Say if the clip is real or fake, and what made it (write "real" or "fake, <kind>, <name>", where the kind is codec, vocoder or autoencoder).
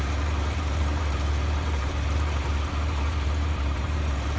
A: fake, vocoder, BigVGAN v2